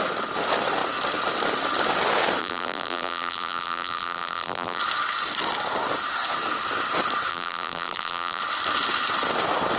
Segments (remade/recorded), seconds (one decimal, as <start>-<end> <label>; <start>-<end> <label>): 0.0-2.4 recorded; 2.4-4.8 remade; 4.8-7.3 recorded; 7.3-8.4 remade; 8.4-9.8 recorded